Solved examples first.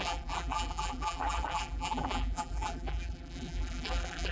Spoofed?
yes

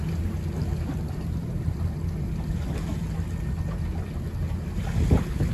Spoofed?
no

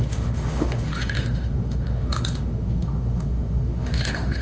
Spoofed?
yes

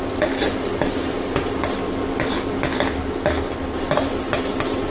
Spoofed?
no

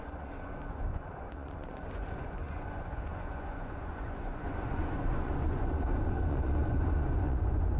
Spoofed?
yes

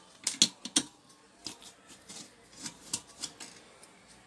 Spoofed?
no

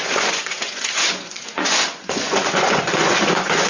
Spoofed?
yes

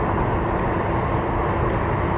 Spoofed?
no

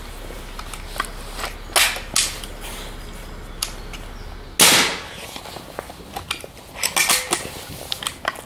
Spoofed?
no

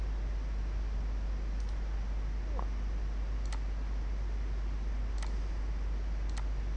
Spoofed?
no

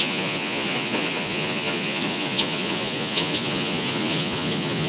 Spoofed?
yes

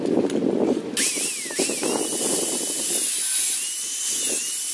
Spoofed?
no